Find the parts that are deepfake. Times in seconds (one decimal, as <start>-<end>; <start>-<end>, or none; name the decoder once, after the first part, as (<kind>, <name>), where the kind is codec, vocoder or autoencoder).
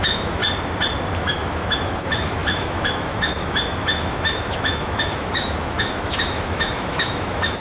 0.0-0.4 (autoencoder, DAC-VAE); 1.2-7.6